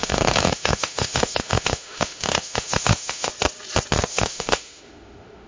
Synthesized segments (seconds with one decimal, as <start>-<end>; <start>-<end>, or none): 0.0-3.3; 4.1-5.5